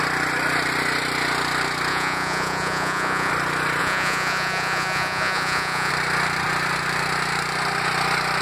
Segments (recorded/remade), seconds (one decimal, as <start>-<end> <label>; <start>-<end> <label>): 0.0-1.9 recorded; 1.9-3.3 remade; 3.3-3.8 recorded; 3.8-5.9 remade; 5.9-8.4 recorded

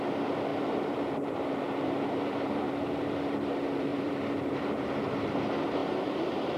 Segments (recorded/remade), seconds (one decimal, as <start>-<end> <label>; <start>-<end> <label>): 0.0-0.5 recorded; 0.5-2.7 remade; 2.7-3.9 recorded; 3.9-4.9 remade; 4.9-6.6 recorded

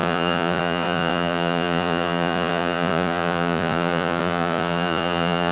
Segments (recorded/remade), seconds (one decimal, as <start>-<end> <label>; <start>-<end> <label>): 0.0-5.5 remade

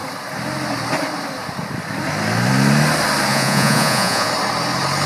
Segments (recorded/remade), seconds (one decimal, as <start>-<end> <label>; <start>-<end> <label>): 0.0-3.3 recorded; 3.3-4.3 remade; 4.3-5.1 recorded

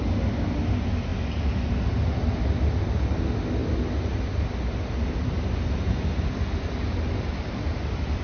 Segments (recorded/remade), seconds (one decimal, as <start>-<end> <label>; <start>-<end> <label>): 0.0-8.2 recorded

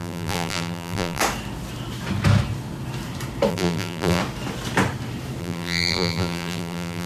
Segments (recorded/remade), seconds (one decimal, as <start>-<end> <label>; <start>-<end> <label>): 0.0-1.2 remade; 1.2-3.5 recorded; 3.5-4.2 remade; 4.2-5.4 recorded; 5.4-7.1 remade